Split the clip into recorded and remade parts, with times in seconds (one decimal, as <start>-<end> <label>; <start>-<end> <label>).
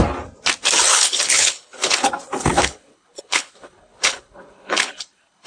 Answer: 0.0-0.9 recorded; 0.9-2.1 remade; 2.1-2.5 recorded; 2.5-5.5 remade